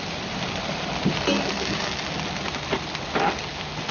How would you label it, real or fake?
real